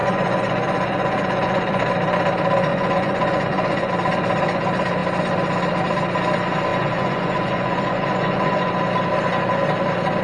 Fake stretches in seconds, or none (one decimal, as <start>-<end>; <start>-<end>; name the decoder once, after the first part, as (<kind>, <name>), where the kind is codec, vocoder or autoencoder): 0.0-1.9 (vocoder, Vocos); 2.7-3.9; 6.7-8.7